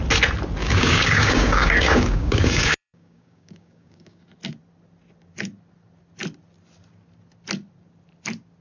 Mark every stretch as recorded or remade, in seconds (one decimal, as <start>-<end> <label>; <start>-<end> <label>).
0.0-0.6 recorded; 0.6-4.2 remade; 4.2-8.6 recorded